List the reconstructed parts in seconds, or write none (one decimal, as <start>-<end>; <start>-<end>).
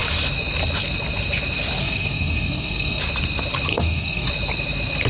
1.8-3.0; 3.7-4.3